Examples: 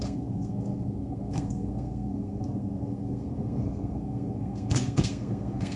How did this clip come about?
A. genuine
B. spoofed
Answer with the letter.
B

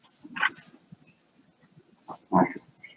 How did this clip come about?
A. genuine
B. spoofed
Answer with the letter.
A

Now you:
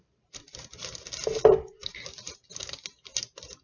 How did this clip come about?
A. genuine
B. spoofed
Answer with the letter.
A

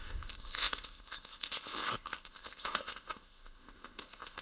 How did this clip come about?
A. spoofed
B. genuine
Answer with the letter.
A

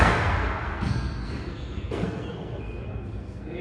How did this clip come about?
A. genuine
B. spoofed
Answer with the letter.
B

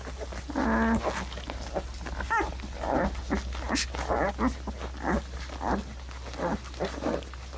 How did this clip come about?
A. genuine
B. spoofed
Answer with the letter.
A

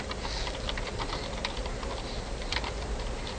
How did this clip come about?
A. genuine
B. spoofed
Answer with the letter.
A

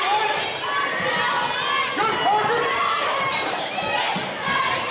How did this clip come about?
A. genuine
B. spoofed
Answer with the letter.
A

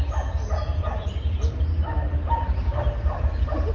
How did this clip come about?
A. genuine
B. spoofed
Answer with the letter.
A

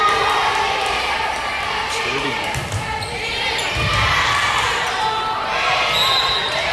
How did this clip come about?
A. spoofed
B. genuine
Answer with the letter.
B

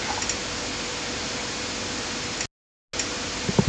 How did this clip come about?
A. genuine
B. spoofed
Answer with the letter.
A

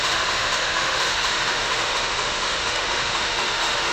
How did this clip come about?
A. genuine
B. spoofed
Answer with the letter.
B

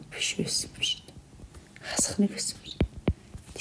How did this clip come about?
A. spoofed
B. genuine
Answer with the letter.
B